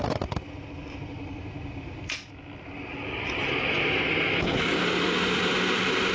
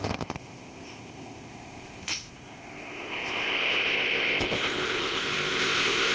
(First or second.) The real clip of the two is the first